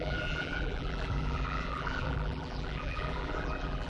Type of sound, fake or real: fake